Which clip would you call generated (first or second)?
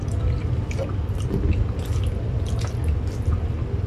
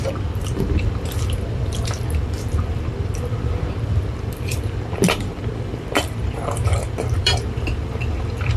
second